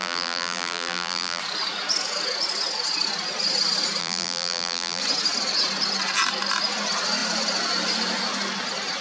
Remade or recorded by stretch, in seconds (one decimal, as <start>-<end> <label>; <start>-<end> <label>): 0.0-1.4 remade; 1.4-4.0 recorded; 4.0-5.0 remade; 5.0-9.0 recorded